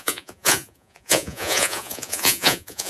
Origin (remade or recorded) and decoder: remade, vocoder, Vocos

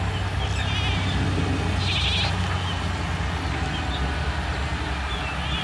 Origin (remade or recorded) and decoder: recorded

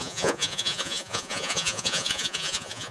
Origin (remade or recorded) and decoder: remade, vocoder, Vocos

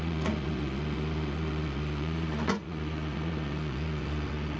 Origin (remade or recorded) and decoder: remade, vocoder, Vocos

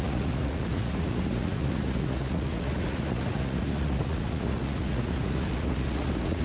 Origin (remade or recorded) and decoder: remade, vocoder, Vocos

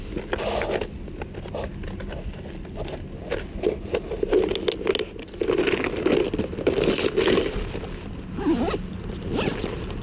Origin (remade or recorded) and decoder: recorded